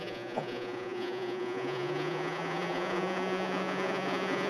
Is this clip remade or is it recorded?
remade